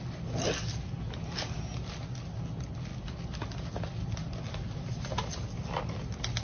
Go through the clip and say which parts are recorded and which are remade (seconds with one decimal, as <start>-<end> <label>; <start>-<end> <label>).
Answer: 0.0-6.4 recorded